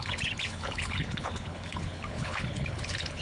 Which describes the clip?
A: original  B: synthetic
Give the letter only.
B